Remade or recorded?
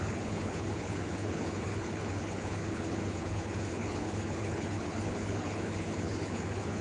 remade